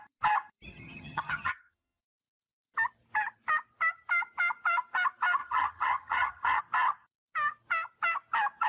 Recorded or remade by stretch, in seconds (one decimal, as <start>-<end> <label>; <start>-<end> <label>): 0.0-0.7 recorded; 0.7-2.0 remade; 2.0-5.4 recorded; 5.4-6.6 remade; 6.6-8.7 recorded

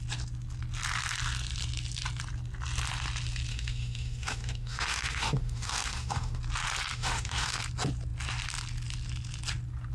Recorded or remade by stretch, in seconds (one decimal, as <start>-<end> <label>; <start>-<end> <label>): 0.0-3.5 recorded; 3.5-6.4 remade; 6.4-6.9 recorded; 6.9-7.6 remade; 7.6-9.9 recorded

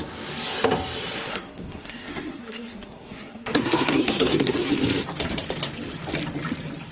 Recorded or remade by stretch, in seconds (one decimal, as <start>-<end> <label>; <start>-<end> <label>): 0.0-1.3 recorded; 1.3-4.7 remade; 4.7-6.9 recorded

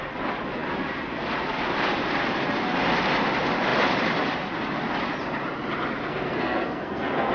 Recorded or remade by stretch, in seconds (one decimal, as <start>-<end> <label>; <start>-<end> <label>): 0.0-6.1 recorded; 6.1-7.3 remade